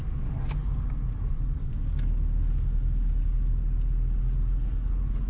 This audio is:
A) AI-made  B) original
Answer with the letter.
B